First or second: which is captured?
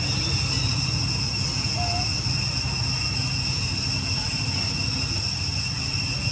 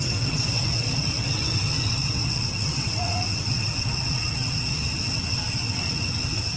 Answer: first